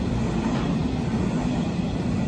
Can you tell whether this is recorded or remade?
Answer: recorded